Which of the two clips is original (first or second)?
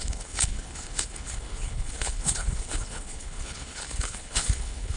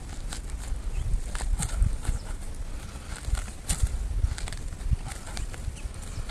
second